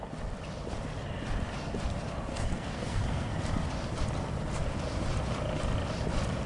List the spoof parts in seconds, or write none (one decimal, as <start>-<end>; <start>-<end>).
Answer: 2.3-3.3